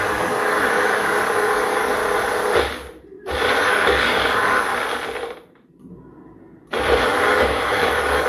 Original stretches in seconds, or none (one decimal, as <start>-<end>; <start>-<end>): 2.0-3.6; 4.7-7.3